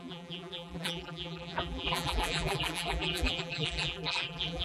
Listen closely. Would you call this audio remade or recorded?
remade